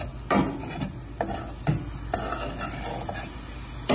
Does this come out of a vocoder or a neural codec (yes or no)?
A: no